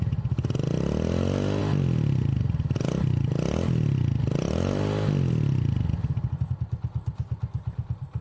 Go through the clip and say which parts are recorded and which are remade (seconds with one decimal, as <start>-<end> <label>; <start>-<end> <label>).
0.0-8.2 recorded